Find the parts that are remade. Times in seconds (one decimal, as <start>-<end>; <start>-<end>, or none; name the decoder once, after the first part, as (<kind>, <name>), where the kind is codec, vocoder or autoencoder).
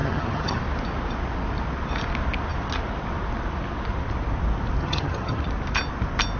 0.0-0.6 (vocoder, HiFi-GAN); 4.8-5.4